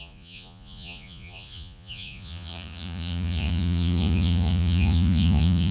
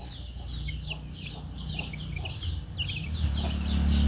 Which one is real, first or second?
second